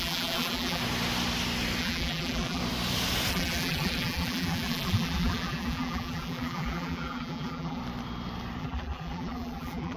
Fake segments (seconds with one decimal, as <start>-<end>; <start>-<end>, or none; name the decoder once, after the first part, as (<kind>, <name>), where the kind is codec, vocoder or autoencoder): 0.0-0.8 (vocoder, BigVGAN v2); 1.8-2.6; 3.3-7.8; 8.6-10.0